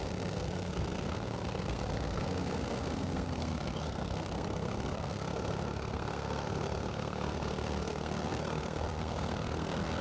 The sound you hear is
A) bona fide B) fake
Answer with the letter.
B